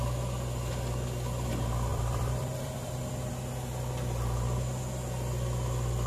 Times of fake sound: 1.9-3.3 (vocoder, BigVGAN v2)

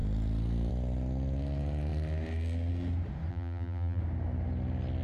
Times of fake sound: 3.3-4.0 (vocoder, BigVGAN v2)

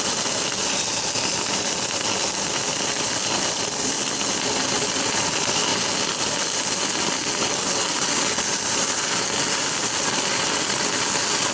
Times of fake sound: none